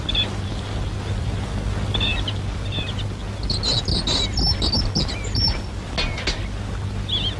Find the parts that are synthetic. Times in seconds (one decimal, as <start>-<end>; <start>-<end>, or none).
none